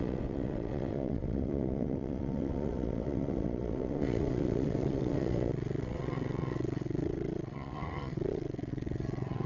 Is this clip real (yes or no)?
no